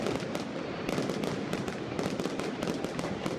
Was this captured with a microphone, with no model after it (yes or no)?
no